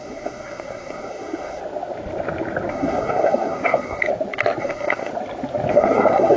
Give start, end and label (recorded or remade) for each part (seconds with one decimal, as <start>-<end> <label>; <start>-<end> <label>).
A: 0.0-1.6 remade; 1.6-2.7 recorded; 2.7-4.1 remade; 4.1-4.6 recorded; 4.6-5.1 remade; 5.1-5.7 recorded; 5.7-6.4 remade